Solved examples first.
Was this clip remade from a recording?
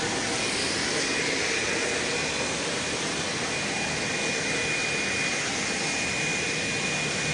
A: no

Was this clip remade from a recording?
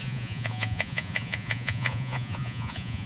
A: yes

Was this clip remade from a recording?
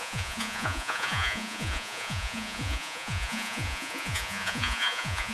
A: yes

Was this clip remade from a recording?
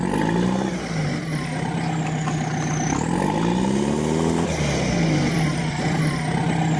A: no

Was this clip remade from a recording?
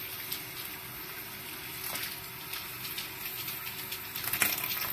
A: no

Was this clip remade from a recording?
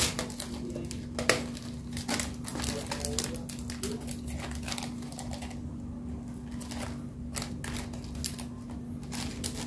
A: no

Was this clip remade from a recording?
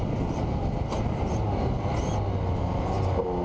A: no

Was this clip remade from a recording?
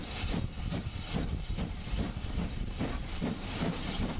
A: yes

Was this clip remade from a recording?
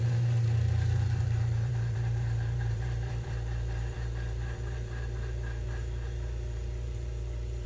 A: yes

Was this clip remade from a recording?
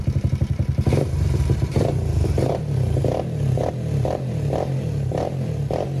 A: yes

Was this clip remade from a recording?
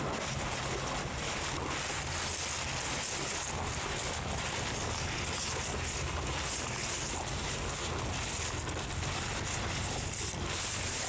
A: no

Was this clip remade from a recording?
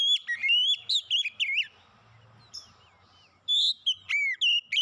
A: no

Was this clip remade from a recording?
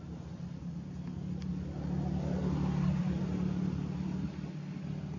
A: no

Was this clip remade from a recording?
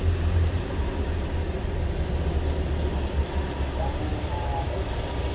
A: no